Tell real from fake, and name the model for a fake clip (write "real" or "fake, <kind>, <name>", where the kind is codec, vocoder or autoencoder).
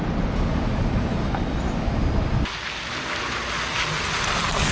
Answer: real